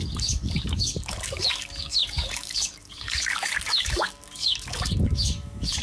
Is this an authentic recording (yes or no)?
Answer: no